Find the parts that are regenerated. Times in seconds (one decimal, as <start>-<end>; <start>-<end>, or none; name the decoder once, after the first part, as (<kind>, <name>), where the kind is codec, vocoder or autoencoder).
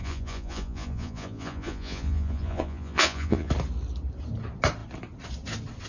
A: 0.0-3.5 (vocoder, Vocos)